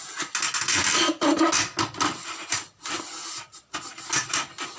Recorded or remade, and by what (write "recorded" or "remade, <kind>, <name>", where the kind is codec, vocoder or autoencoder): recorded